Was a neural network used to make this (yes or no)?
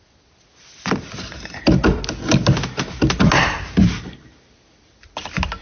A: no